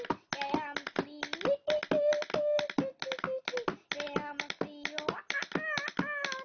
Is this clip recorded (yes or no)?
yes